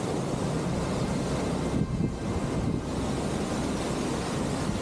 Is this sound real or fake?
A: real